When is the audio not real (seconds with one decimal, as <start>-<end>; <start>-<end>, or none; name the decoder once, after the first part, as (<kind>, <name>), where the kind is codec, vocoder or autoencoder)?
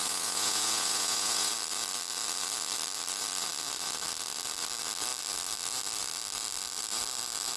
0.0-1.5 (vocoder, Vocos)